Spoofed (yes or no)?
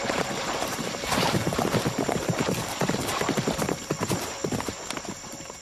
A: yes